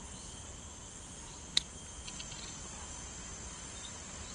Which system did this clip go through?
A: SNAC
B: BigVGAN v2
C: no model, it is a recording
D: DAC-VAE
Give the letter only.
C